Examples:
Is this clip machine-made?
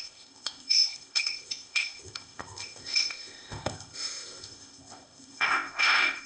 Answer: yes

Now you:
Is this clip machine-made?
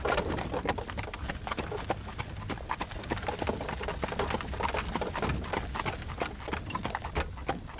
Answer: no